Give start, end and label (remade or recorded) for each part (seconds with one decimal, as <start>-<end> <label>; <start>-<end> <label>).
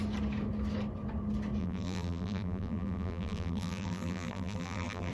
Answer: 0.0-1.6 recorded; 1.6-5.1 remade